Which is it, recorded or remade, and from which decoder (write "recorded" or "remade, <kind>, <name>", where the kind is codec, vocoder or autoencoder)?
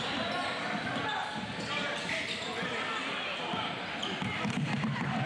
recorded